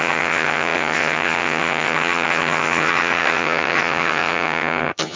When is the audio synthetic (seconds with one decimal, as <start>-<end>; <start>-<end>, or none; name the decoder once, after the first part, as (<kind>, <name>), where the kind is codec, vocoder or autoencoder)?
0.0-5.2 (vocoder, HiFi-GAN)